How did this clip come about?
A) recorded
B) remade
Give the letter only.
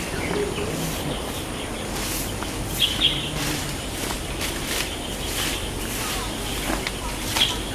A